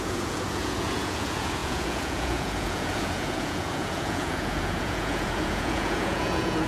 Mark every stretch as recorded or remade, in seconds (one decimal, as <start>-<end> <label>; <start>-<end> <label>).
0.0-6.7 remade